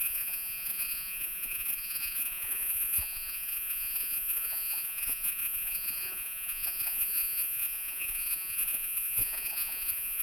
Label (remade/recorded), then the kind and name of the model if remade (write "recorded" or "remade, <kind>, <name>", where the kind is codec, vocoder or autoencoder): remade, vocoder, Vocos